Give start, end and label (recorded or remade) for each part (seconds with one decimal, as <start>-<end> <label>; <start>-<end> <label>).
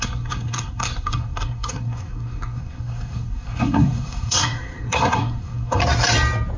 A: 0.0-5.8 remade; 5.8-6.6 recorded